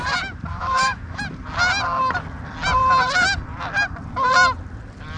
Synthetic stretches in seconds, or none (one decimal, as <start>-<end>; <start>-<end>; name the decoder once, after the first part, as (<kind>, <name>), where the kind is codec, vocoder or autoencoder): 0.5-1.2 (autoencoder, DAC-VAE)